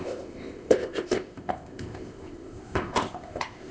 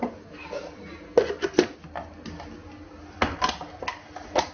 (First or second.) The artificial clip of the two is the first